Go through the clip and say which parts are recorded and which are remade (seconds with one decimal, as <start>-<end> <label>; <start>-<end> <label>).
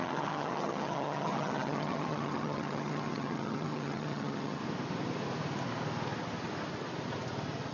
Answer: 0.0-4.6 remade; 4.6-7.7 recorded